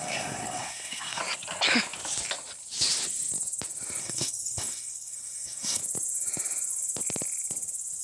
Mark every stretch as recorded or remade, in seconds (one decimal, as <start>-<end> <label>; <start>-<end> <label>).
0.0-1.2 remade; 1.2-4.0 recorded; 4.0-5.8 remade; 5.8-8.0 recorded